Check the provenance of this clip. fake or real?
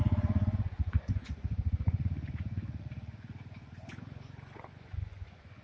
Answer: fake